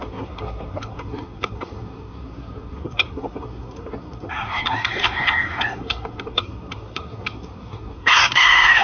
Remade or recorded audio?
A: remade